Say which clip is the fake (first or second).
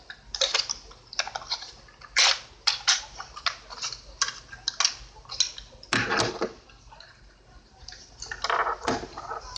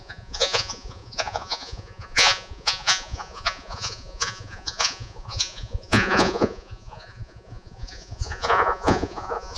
second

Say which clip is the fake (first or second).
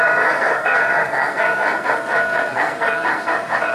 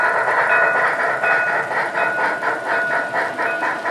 first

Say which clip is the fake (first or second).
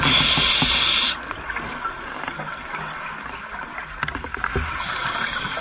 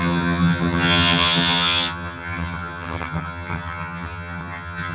second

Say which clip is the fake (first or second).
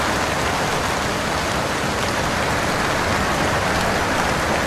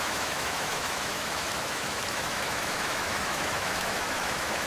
second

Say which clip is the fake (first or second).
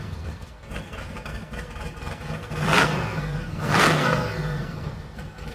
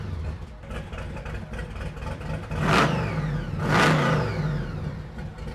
first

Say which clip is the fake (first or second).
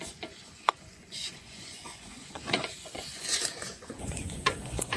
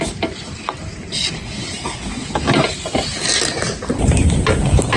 first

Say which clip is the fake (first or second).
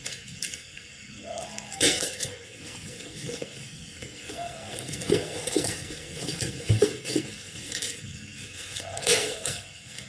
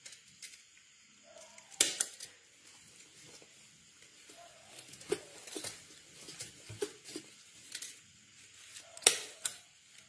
first